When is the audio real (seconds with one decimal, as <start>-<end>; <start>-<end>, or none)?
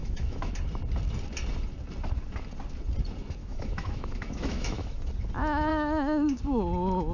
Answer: 0.5-3.4; 5.1-5.7; 6.4-7.1